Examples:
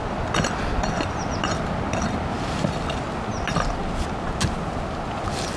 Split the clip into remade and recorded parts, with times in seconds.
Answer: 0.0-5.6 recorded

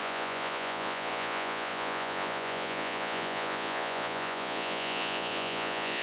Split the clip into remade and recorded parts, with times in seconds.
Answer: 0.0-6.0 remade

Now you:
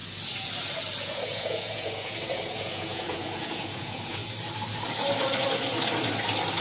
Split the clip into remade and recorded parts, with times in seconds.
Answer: 0.0-1.0 recorded; 1.0-4.2 remade; 4.2-6.6 recorded

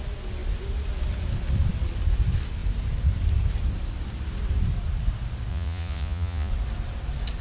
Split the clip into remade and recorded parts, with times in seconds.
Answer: 0.0-5.5 recorded; 5.5-6.5 remade; 6.5-7.4 recorded